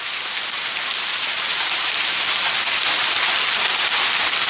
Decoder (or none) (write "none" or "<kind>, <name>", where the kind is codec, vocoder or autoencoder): none